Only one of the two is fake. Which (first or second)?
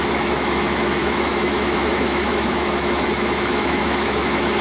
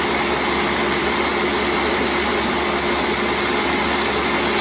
first